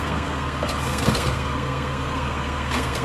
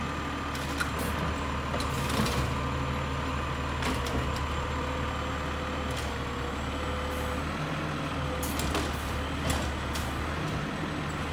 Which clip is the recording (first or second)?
second